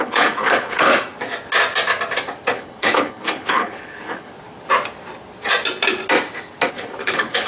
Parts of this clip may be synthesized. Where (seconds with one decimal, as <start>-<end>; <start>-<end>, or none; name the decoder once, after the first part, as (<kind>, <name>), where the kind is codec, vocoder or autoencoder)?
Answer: 0.0-0.9 (codec, HILCodec); 2.5-4.3; 6.7-7.5